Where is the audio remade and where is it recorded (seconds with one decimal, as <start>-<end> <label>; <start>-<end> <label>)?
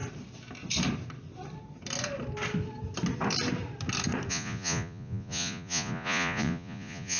0.0-4.3 recorded; 4.3-7.2 remade